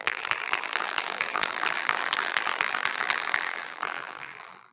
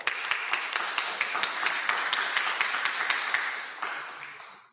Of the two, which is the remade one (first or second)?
first